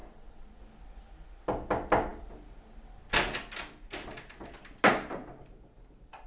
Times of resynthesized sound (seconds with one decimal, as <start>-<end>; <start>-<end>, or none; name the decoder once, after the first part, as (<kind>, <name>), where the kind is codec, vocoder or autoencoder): 0.0-0.6 (vocoder, Vocos)